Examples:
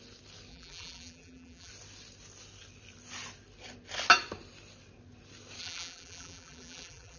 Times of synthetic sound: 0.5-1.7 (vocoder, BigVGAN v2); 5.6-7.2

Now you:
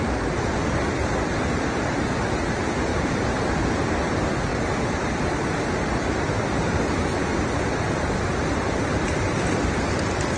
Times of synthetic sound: 2.9-4.1 (vocoder, BigVGAN v2)

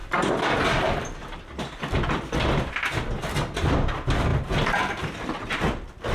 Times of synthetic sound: 0.0-2.7 (vocoder, BigVGAN v2); 4.3-5.0

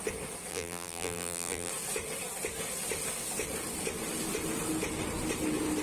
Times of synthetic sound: 0.5-1.7 (vocoder, BigVGAN v2)

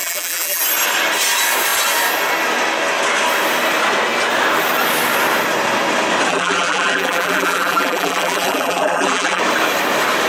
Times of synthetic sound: 0.0-0.6 (vocoder, BigVGAN v2); 6.3-9.4

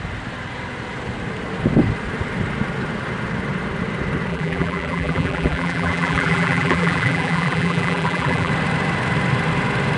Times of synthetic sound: 4.3-8.5 (vocoder, BigVGAN v2)

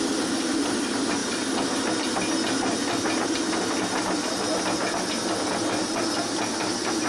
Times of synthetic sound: none

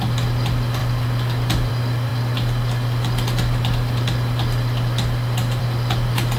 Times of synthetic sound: none